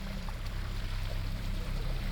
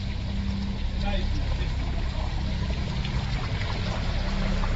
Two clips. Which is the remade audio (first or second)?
first